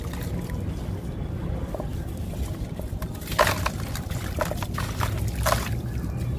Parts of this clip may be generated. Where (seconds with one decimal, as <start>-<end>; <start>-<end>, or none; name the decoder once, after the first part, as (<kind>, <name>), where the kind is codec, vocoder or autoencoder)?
none